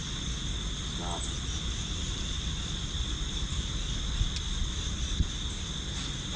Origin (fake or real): real